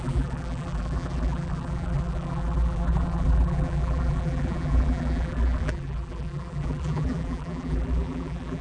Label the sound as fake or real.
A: fake